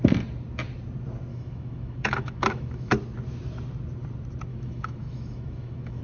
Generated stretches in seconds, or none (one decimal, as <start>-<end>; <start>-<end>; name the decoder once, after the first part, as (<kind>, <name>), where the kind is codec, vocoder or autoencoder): 1.3-2.9 (autoencoder, DAC-VAE); 4.5-6.0